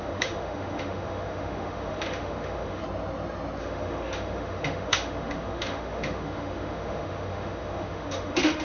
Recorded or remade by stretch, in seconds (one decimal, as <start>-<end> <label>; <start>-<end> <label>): 0.0-2.8 remade; 2.8-3.6 recorded; 3.6-8.6 remade